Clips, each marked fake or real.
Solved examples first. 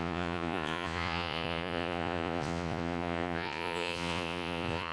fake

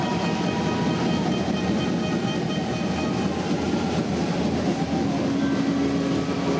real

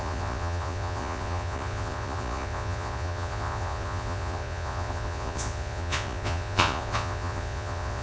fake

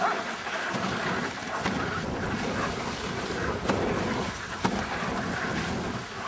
real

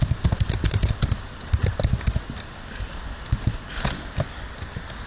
real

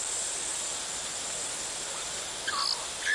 real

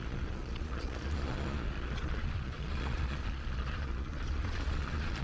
fake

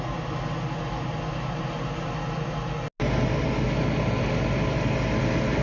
real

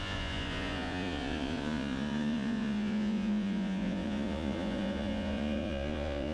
fake